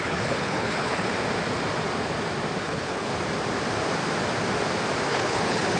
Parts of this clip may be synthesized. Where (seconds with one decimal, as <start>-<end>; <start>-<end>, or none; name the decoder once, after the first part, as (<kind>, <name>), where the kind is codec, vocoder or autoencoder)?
0.0-1.1 (codec, HILCodec); 2.6-3.1; 5.1-5.8